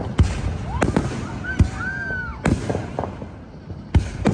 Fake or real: real